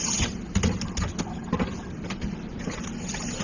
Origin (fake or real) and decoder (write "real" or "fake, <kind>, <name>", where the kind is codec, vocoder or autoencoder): real